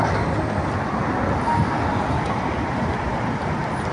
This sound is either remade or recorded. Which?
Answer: recorded